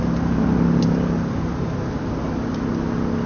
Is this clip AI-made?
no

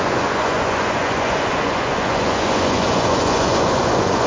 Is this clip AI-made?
yes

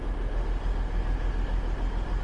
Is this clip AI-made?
no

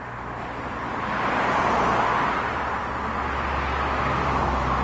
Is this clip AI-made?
no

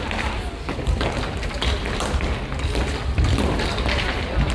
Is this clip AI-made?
no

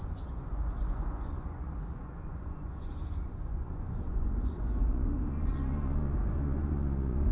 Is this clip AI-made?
yes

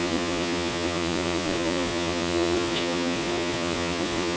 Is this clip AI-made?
yes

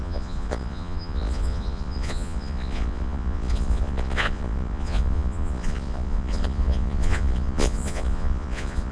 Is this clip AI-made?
yes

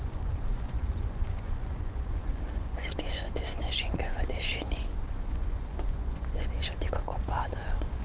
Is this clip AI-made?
yes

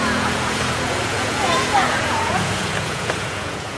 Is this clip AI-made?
yes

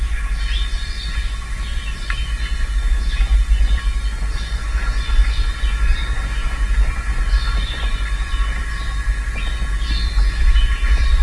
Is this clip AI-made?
yes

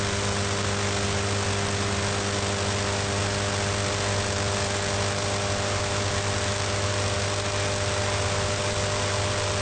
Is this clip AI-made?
no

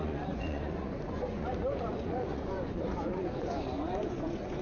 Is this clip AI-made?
yes